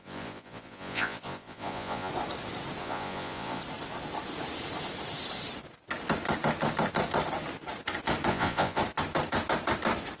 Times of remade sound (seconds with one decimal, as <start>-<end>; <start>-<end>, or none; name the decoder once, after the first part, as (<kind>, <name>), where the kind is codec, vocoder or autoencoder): 0.0-2.1 (vocoder, Vocos); 2.8-3.6; 8.3-8.8